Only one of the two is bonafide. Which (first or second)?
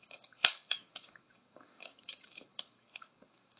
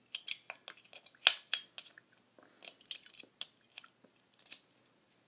second